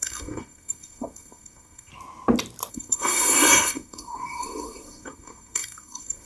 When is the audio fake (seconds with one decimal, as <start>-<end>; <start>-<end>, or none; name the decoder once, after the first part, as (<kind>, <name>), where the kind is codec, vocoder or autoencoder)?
0.0-1.9 (codec, SNAC); 2.7-6.3